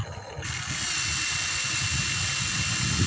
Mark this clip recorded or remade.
recorded